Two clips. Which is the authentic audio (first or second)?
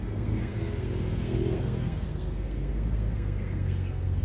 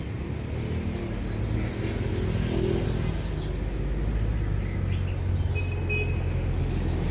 second